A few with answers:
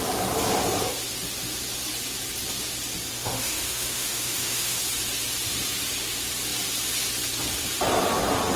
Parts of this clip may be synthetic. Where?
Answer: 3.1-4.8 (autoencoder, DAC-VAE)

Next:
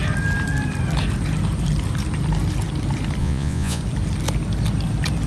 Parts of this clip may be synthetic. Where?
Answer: 3.2-3.8 (vocoder, Vocos)

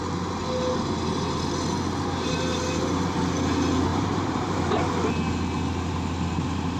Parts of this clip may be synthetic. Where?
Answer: 3.9-4.8 (vocoder, BigVGAN v2)

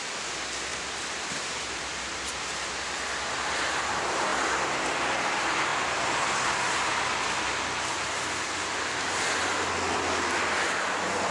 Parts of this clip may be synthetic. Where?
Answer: 0.7-2.7 (vocoder, BigVGAN v2); 4.3-4.9; 5.7-6.2

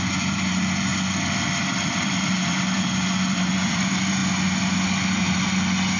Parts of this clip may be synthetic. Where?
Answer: 0.0-0.9 (vocoder, BigVGAN v2); 2.0-4.2

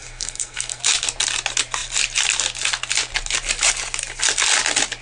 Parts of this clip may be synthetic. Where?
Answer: 0.0-0.8 (codec, SNAC)